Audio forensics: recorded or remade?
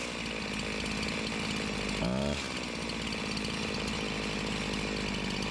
recorded